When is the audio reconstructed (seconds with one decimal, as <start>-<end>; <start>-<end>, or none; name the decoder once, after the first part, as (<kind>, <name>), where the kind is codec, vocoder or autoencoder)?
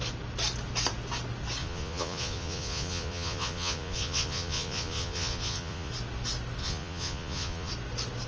1.6-5.9 (vocoder, Vocos); 6.6-7.7